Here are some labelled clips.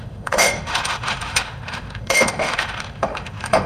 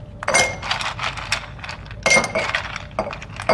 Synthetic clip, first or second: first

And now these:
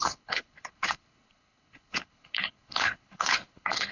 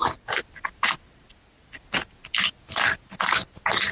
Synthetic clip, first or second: first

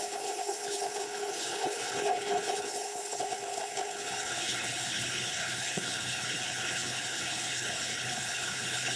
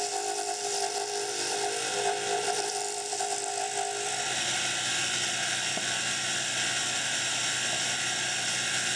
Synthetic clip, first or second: first